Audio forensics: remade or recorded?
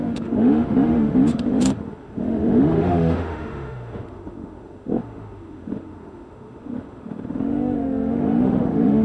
remade